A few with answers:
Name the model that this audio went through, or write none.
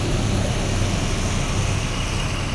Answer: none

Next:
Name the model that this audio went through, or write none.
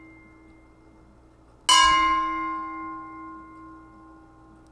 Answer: none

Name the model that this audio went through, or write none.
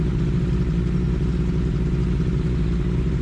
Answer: none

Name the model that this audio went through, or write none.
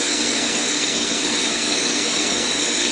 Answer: codec, SNAC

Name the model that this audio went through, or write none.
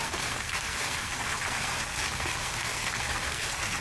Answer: codec, SNAC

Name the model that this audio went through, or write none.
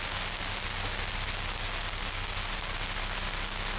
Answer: none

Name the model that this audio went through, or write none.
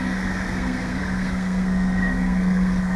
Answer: codec, SNAC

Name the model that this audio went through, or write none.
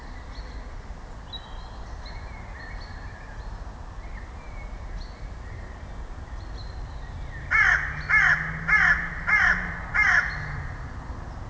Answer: none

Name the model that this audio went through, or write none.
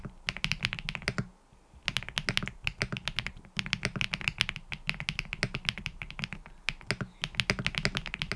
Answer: none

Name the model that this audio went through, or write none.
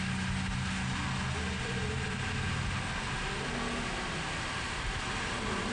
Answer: none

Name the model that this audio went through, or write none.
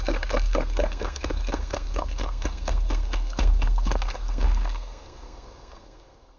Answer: codec, SNAC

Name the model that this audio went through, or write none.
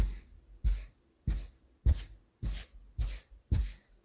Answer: none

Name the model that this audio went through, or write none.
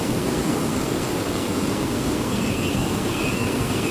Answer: codec, SNAC